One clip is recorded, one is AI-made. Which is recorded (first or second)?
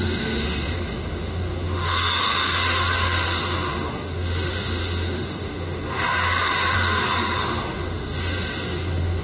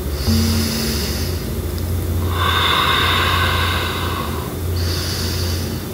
second